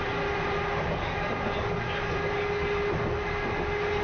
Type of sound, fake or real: real